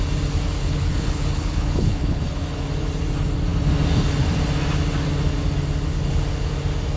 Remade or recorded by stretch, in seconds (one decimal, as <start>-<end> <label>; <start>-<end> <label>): 0.0-0.6 recorded; 0.6-2.2 remade; 2.2-7.0 recorded